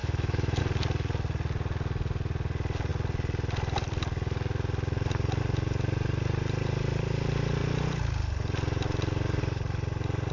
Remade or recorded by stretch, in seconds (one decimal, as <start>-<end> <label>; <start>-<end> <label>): 0.0-0.6 remade; 0.6-10.3 recorded